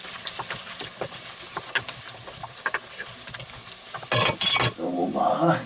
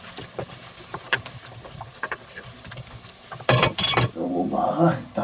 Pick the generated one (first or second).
second